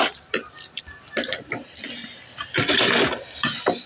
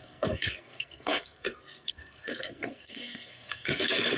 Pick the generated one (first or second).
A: second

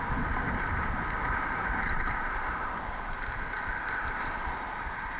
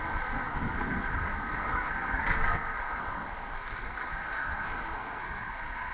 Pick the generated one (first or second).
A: second